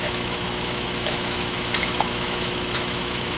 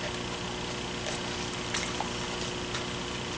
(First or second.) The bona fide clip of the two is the second